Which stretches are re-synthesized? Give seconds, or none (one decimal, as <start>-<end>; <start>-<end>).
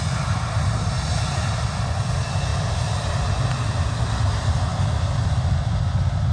none